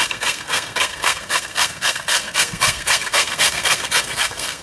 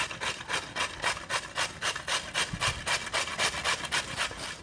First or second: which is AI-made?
first